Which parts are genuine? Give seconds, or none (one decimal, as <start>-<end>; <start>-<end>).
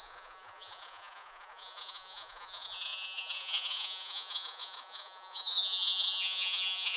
none